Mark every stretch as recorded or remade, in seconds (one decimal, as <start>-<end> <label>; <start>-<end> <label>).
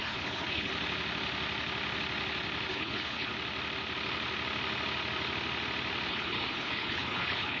0.0-0.7 remade; 0.7-2.7 recorded; 2.7-3.3 remade; 3.3-6.1 recorded; 6.1-7.6 remade